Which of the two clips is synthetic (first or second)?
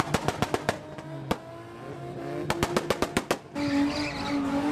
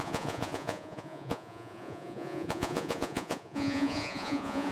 second